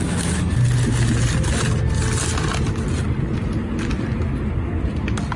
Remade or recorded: recorded